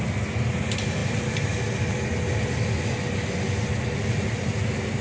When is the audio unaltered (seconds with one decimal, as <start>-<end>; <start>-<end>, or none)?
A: 0.0-5.0